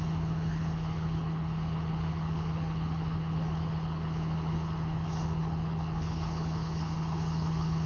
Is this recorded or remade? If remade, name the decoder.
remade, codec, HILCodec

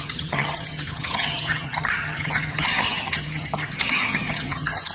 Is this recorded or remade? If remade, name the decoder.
remade, vocoder, HiFi-GAN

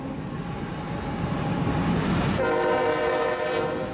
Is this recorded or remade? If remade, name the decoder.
recorded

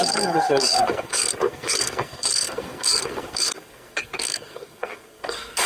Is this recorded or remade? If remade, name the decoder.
remade, codec, SNAC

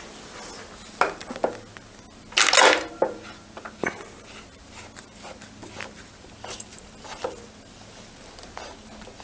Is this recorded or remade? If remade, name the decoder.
recorded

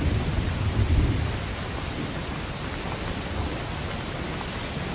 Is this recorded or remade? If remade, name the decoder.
recorded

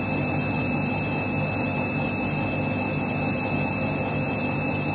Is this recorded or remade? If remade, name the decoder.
recorded